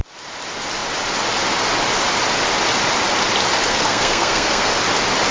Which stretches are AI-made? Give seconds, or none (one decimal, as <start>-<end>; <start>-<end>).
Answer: 3.7-4.7